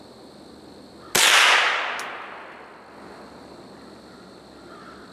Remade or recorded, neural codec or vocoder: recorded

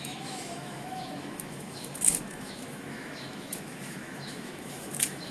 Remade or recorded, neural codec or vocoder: remade, autoencoder, DAC-VAE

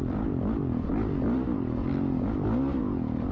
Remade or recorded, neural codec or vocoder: recorded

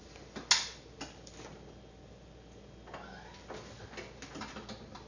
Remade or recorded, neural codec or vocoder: recorded